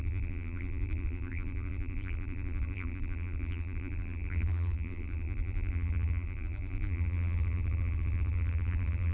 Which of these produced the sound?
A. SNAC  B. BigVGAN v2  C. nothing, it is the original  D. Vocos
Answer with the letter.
B